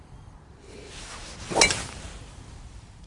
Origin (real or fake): real